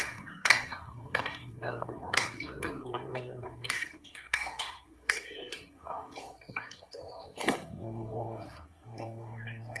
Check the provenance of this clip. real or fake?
fake